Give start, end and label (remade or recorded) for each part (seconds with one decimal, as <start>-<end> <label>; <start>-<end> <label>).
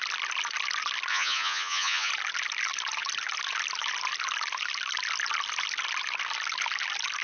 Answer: 0.0-1.1 recorded; 1.1-2.1 remade; 2.1-7.2 recorded